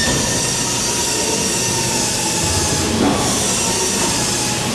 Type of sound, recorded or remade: recorded